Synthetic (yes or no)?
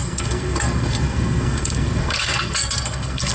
yes